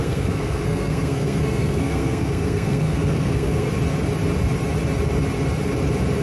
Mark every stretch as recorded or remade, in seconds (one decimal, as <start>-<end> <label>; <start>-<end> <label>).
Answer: 0.0-3.7 remade; 3.7-6.2 recorded